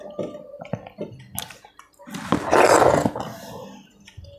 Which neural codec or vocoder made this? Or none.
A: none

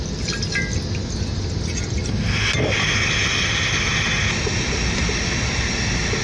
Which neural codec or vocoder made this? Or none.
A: none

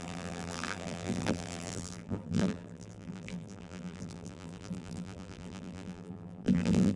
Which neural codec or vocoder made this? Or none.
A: vocoder, BigVGAN v2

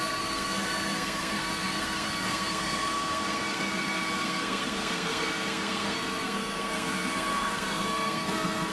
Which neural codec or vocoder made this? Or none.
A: codec, SNAC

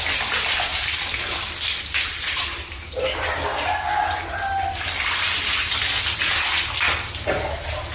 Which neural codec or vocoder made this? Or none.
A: none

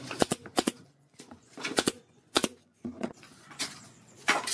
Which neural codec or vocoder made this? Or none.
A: vocoder, Vocos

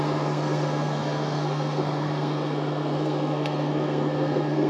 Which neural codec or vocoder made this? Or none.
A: codec, SNAC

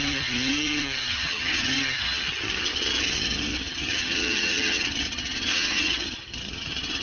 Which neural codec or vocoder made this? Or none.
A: vocoder, HiFi-GAN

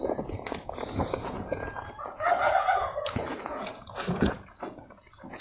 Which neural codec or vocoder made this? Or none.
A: vocoder, Vocos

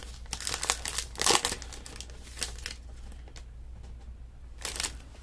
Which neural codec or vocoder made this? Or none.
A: none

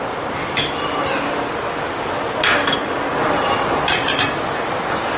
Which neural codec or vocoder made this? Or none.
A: none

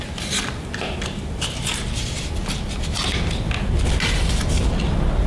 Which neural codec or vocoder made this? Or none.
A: none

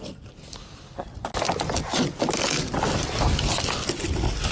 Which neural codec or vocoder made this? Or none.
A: none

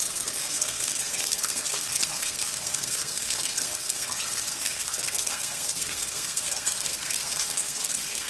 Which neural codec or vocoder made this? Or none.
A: codec, SNAC